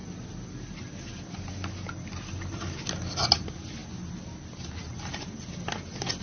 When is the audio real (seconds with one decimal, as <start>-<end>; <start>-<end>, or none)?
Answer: 0.0-6.2